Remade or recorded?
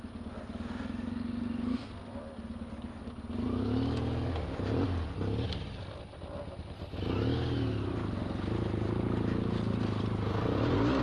recorded